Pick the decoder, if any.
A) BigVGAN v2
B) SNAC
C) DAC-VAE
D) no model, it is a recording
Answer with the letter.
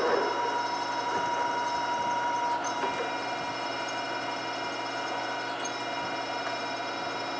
D